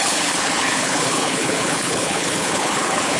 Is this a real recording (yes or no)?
no